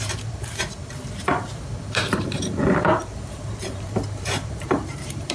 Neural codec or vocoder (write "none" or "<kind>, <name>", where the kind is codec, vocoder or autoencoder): vocoder, BigVGAN v2